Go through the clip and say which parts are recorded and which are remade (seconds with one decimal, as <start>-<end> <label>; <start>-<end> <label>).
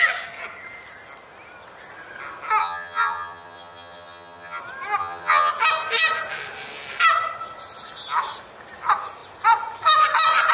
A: 0.0-2.6 recorded; 2.6-4.6 remade; 4.6-5.0 recorded; 5.0-5.5 remade; 5.5-10.5 recorded